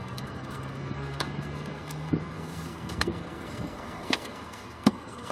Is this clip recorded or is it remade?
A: remade